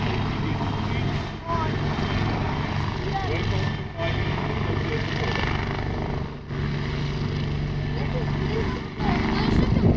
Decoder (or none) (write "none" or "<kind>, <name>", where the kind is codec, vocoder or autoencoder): none